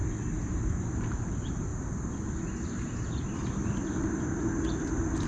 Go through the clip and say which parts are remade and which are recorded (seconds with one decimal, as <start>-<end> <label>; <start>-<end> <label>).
0.0-0.5 recorded; 0.5-1.7 remade; 1.7-5.3 recorded